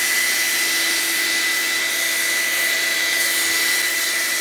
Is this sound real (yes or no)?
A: yes